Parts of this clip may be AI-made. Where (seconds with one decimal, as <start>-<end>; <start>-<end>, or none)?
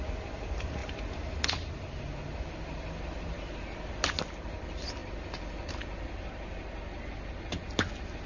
none